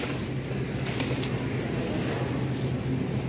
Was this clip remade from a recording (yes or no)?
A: no